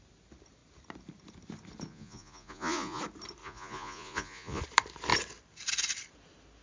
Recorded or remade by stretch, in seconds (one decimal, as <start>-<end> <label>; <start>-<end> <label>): 0.0-1.9 recorded; 1.9-3.0 remade; 3.0-3.4 recorded; 3.4-4.6 remade; 4.6-6.6 recorded